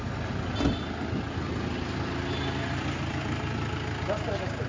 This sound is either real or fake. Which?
real